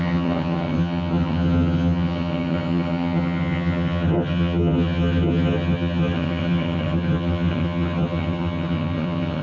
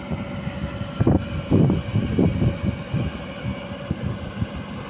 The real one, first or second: second